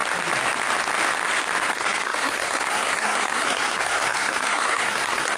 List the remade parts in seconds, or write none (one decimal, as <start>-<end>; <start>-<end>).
1.7-5.4

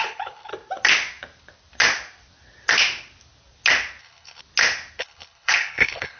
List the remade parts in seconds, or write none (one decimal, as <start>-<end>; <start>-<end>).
0.0-0.5; 4.0-4.4; 5.0-6.2

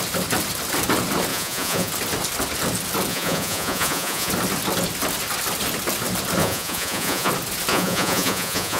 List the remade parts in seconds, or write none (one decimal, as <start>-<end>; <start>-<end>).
1.3-1.9; 3.1-4.3; 6.4-7.3; 7.7-8.8

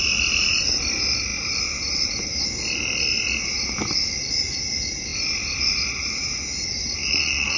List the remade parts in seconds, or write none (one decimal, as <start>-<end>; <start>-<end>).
7.0-7.6

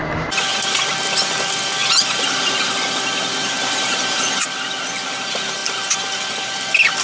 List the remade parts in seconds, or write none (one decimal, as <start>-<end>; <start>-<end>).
1.8-2.7; 3.4-4.3